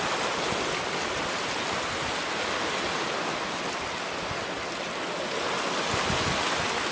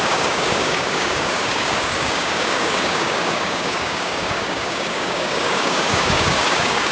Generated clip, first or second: second